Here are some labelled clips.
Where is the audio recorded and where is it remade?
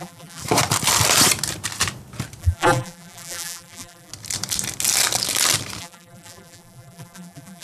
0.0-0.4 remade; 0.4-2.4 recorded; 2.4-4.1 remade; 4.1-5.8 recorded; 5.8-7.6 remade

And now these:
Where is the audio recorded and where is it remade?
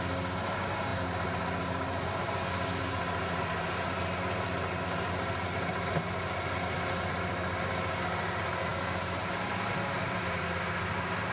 0.0-11.3 recorded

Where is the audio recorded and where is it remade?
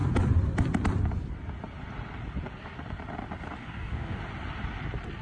0.0-3.6 recorded; 3.6-4.2 remade; 4.2-5.2 recorded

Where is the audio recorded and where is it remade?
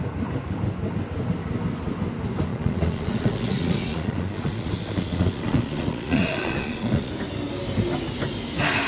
0.0-2.5 recorded; 2.5-7.1 remade; 7.1-8.9 recorded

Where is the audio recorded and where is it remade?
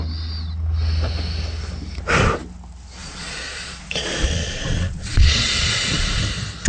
0.0-3.0 recorded; 3.0-6.2 remade; 6.2-6.7 recorded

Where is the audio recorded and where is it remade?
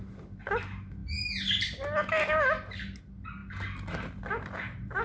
0.0-5.0 recorded